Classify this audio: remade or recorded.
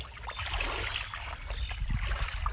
recorded